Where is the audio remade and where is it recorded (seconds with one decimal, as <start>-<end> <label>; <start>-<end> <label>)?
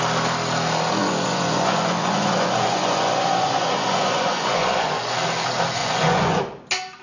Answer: 0.0-1.0 recorded; 1.0-5.1 remade; 5.1-5.8 recorded; 5.8-6.4 remade; 6.4-7.0 recorded